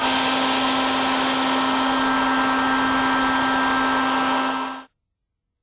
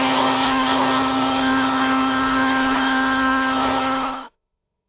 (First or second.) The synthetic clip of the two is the second